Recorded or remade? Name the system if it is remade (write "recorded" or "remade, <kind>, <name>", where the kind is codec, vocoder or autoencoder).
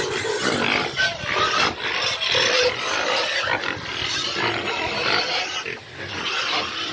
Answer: recorded